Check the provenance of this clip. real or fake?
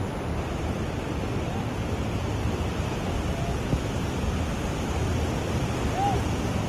real